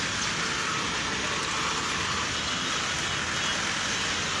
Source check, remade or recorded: recorded